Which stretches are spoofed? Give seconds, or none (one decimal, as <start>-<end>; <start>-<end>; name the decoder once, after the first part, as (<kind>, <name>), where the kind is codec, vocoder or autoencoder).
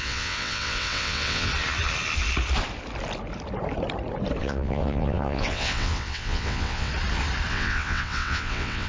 0.0-1.5 (vocoder, WaveNeXt); 4.4-6.9; 7.5-8.9